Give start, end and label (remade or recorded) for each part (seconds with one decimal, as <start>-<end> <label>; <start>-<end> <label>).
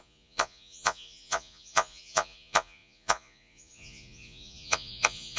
0.0-5.4 remade